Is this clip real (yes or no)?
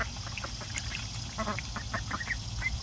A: yes